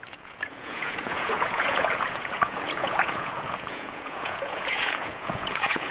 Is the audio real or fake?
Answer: fake